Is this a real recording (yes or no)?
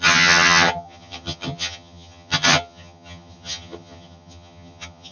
no